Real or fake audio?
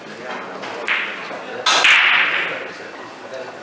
real